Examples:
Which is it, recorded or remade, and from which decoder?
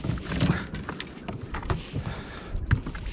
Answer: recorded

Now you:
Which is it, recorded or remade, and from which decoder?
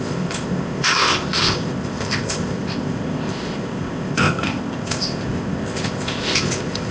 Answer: remade, codec, ZipCodec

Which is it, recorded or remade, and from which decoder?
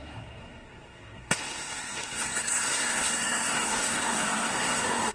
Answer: remade, codec, SNAC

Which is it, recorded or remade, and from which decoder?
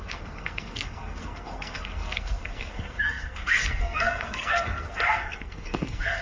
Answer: remade, codec, SNAC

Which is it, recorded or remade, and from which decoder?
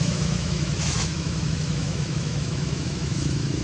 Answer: remade, autoencoder, DAC-VAE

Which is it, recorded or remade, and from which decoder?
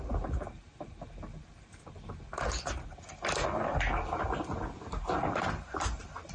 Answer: recorded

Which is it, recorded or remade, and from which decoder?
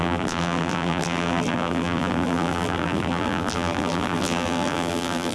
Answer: remade, vocoder, BigVGAN v2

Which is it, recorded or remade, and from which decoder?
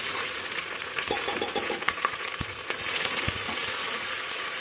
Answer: remade, vocoder, Vocos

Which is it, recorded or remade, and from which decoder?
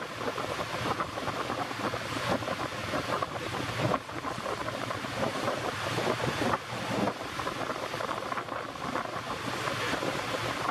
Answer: recorded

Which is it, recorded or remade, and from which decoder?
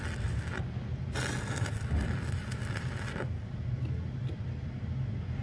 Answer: recorded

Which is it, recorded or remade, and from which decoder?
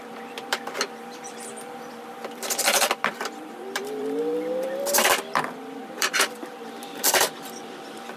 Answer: remade, vocoder, BigVGAN v2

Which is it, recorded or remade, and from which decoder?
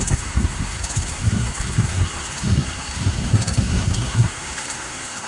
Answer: remade, codec, SNAC